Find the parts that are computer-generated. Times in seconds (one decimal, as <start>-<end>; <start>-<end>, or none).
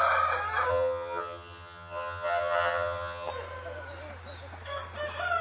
0.7-3.3